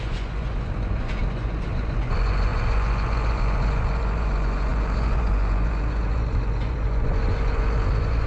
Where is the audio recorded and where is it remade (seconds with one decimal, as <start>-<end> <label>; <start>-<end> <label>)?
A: 0.0-8.3 remade